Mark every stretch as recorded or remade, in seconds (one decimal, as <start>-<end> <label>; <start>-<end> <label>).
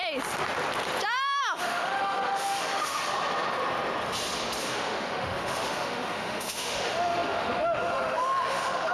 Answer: 0.0-1.4 recorded; 1.4-3.0 remade; 3.0-4.6 recorded; 4.6-8.9 remade